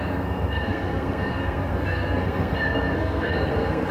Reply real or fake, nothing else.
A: fake